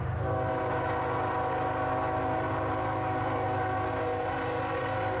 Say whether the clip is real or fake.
real